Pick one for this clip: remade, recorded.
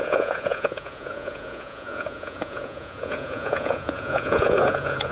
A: remade